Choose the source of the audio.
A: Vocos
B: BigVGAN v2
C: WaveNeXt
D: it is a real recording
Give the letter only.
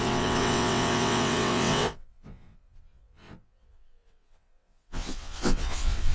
C